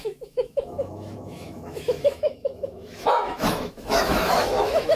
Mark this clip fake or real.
fake